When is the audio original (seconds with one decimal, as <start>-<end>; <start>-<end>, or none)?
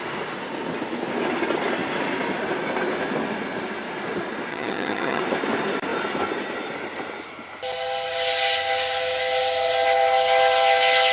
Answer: 0.0-4.5; 5.2-11.1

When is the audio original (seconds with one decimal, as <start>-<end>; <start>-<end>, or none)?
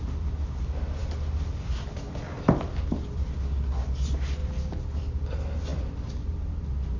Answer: 0.0-7.0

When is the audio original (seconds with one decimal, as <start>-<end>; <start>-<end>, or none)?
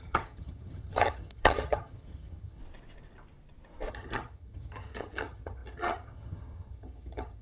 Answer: 2.6-3.9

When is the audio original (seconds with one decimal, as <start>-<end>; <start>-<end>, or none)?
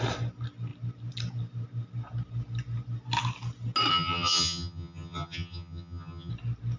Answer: 0.0-3.9; 6.3-6.8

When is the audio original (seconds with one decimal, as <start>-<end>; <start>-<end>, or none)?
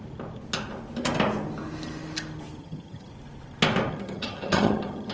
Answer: 0.0-2.6; 3.1-3.9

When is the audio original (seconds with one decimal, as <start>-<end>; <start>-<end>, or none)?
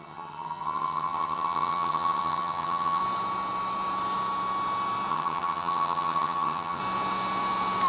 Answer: 3.0-5.1; 6.8-7.9